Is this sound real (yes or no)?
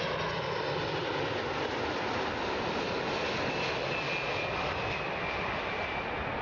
yes